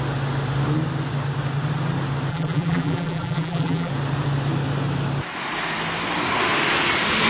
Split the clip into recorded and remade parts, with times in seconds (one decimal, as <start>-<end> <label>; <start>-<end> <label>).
0.0-2.3 recorded; 2.3-3.9 remade; 3.9-7.3 recorded